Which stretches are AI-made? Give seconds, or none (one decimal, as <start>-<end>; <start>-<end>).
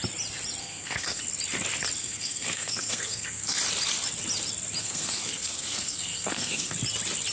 0.6-1.2; 2.0-3.6; 4.8-6.7